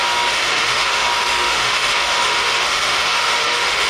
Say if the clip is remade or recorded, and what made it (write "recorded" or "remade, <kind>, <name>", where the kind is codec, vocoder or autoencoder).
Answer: remade, autoencoder, DAC-VAE